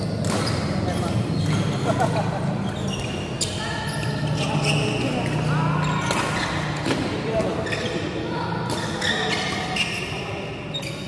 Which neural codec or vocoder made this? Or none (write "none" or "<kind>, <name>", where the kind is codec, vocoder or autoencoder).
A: none